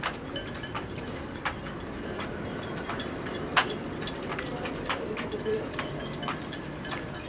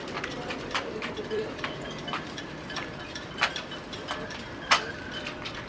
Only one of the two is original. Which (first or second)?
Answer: first